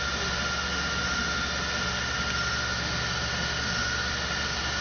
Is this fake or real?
real